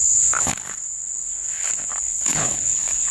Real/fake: fake